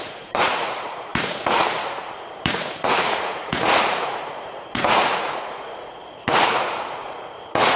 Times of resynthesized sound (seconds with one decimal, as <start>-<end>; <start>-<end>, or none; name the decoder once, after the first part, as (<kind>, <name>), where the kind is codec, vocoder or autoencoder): 0.0-7.8 (vocoder, Vocos)